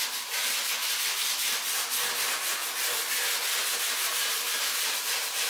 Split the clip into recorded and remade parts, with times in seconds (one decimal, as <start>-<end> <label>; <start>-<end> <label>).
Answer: 0.0-0.4 remade; 0.4-3.7 recorded; 3.7-5.5 remade